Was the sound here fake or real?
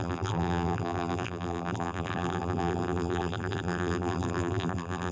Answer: fake